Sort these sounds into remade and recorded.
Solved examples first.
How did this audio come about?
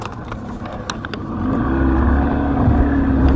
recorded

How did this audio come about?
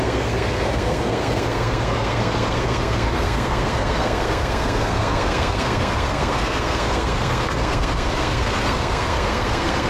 remade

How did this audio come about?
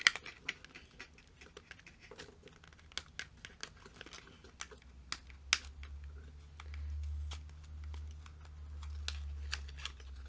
recorded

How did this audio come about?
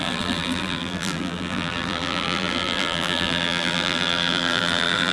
remade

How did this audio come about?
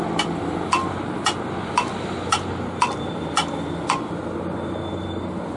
recorded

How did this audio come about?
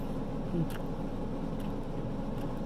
recorded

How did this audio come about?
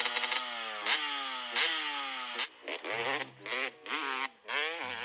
recorded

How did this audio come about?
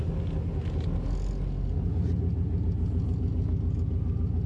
recorded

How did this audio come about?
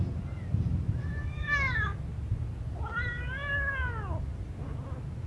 recorded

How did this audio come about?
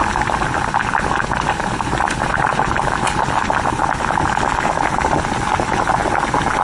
recorded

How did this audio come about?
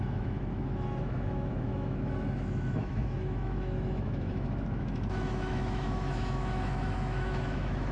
remade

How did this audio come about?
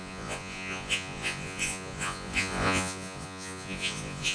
remade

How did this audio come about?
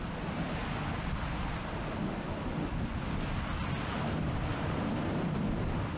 recorded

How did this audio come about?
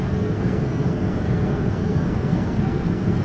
remade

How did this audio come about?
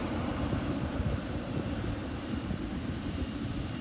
remade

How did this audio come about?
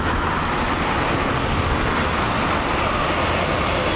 recorded